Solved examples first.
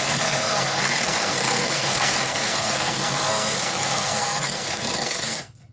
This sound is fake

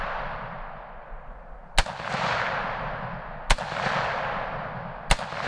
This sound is real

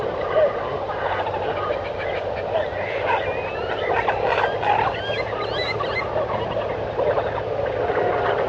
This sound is real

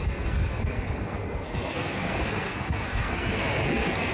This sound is fake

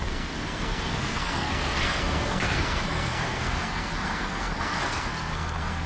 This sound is fake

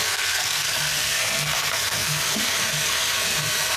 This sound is fake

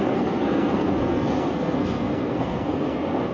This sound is fake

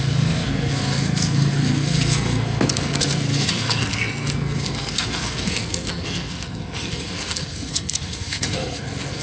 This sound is fake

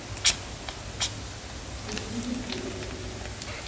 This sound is real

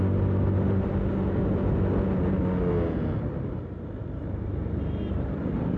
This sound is real